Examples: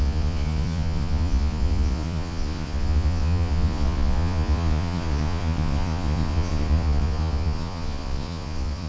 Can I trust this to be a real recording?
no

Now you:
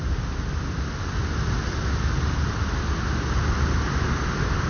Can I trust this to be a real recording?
yes